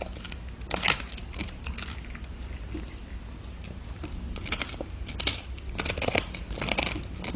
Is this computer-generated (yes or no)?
no